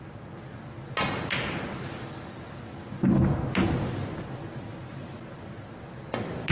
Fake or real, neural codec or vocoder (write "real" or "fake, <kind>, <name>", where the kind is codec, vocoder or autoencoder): real